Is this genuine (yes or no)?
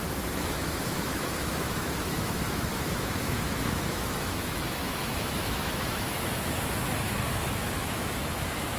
no